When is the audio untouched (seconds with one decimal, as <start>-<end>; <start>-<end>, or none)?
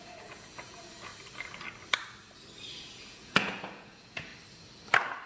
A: 1.1-2.8; 4.3-5.3